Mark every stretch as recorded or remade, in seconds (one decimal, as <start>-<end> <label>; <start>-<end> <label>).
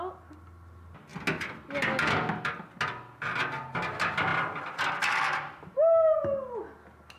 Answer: 0.0-7.2 recorded